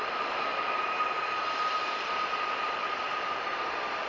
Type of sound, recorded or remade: remade